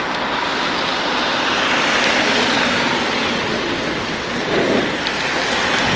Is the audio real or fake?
real